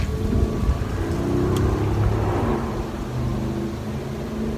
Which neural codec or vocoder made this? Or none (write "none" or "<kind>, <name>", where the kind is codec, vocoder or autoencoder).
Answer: none